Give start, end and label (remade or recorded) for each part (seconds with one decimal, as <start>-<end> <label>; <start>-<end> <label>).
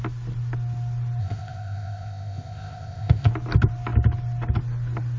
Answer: 0.0-1.2 recorded; 1.2-3.3 remade; 3.3-5.2 recorded